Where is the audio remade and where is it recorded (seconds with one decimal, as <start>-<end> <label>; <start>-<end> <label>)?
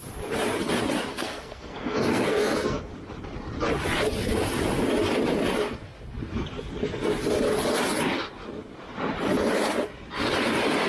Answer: 0.0-1.1 recorded; 1.1-2.9 remade; 2.9-10.9 recorded